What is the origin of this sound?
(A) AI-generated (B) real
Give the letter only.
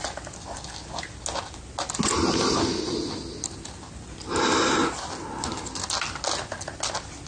B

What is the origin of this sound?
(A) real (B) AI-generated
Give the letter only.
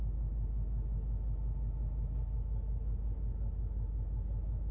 A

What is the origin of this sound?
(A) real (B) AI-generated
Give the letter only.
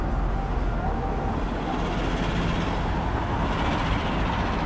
A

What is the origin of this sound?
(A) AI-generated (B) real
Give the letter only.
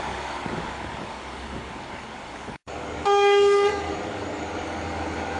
A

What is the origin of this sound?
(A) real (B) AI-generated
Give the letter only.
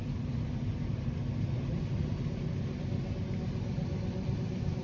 A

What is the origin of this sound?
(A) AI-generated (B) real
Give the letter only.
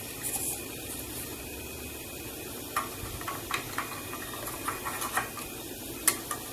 B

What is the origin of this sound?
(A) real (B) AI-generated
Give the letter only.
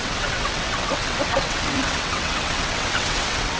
B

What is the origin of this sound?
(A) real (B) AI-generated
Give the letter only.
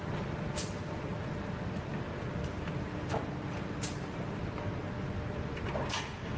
A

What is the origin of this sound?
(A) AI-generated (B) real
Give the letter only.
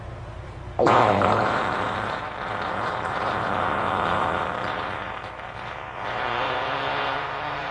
A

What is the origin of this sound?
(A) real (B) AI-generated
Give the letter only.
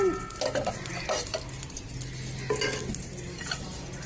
A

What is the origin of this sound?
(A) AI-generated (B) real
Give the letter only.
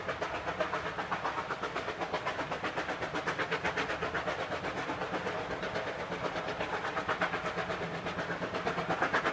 B